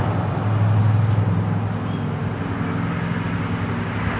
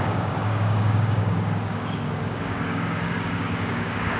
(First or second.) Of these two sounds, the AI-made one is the second